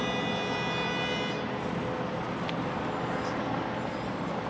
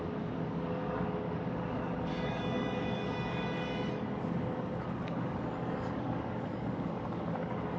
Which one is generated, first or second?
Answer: second